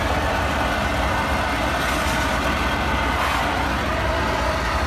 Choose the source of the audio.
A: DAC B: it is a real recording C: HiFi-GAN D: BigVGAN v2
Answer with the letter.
B